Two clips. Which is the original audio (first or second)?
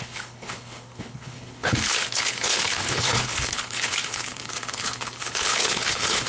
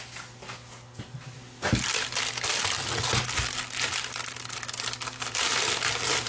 second